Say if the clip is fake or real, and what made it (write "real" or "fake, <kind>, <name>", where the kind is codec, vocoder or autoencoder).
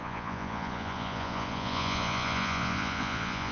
fake, vocoder, Vocos